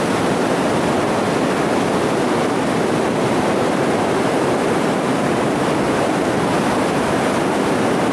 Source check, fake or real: real